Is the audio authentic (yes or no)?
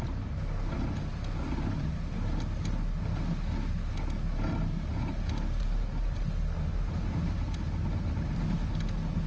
yes